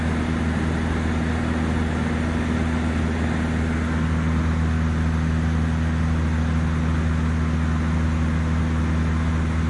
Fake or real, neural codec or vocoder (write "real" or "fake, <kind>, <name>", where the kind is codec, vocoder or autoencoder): real